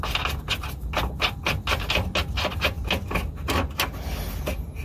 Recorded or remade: recorded